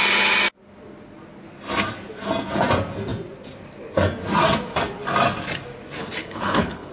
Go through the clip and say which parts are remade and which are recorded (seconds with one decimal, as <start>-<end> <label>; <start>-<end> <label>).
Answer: 0.0-6.2 recorded; 6.2-6.9 remade